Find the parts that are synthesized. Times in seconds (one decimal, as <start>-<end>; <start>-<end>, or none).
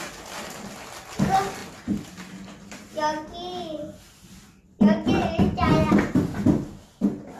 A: none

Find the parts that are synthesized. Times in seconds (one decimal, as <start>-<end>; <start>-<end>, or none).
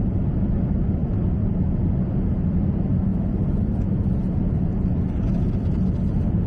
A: none